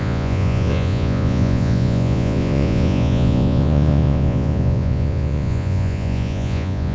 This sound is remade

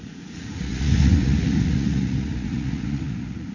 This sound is remade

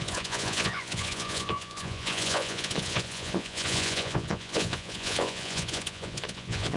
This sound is remade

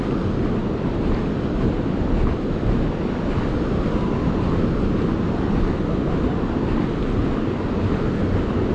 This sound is recorded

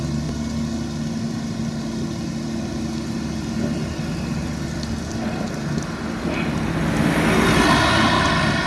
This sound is recorded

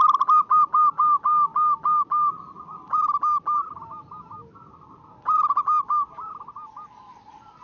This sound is recorded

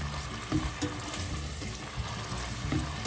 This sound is recorded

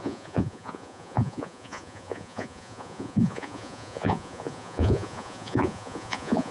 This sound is remade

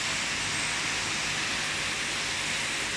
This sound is recorded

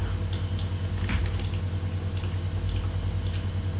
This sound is recorded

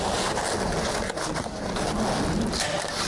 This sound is recorded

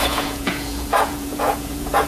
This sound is remade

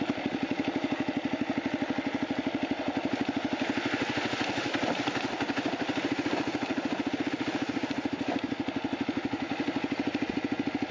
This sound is recorded